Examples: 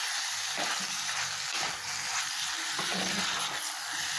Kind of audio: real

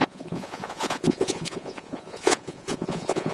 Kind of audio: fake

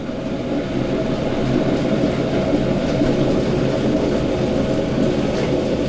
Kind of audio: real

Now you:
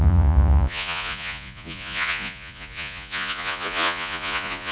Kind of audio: fake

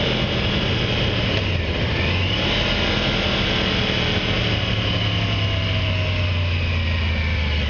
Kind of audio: real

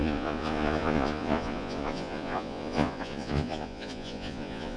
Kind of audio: fake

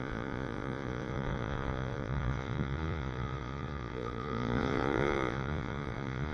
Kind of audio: fake